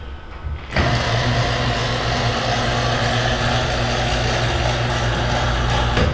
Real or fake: real